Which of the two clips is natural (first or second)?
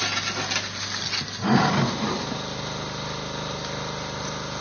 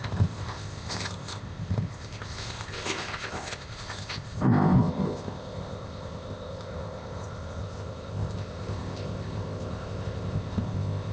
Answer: first